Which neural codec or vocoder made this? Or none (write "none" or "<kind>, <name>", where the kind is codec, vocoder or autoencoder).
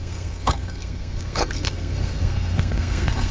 codec, SNAC